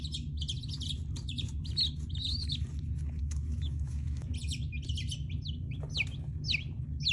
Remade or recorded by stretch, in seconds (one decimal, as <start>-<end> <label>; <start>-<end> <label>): 0.0-3.2 recorded; 3.2-4.3 remade; 4.3-7.1 recorded